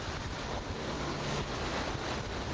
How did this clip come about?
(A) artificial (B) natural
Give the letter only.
B